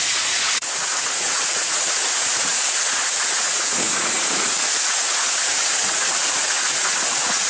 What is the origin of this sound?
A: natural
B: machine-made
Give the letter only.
B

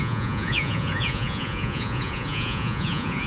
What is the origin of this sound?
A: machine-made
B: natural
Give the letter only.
A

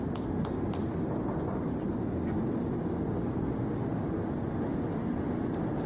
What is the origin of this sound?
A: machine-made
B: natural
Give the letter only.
B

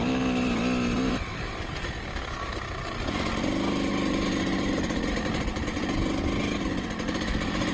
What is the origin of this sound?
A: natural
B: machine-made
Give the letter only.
A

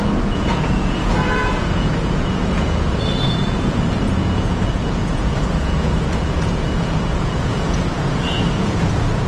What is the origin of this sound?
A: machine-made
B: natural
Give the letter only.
A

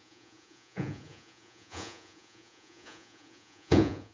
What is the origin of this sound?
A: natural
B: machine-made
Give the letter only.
B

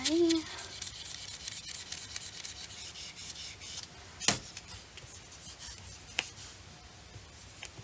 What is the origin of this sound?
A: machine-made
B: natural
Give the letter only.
B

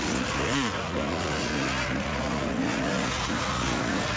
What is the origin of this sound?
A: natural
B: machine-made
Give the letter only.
B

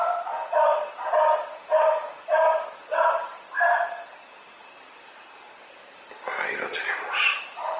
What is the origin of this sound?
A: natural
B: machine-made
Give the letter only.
A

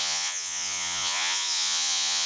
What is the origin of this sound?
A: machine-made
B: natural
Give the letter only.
A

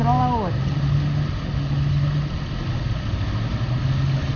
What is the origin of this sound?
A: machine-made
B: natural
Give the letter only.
B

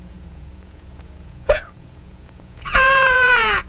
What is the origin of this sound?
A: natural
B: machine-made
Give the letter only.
B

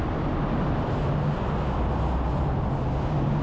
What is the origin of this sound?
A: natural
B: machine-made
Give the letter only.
A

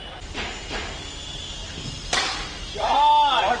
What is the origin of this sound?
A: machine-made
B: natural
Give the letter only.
B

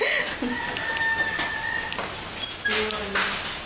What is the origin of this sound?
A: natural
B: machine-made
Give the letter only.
A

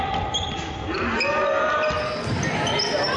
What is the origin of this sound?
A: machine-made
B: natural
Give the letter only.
B